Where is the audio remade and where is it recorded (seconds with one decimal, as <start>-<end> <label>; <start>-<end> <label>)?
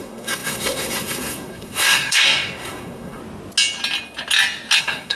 0.0-3.2 remade; 3.2-4.8 recorded; 4.8-5.2 remade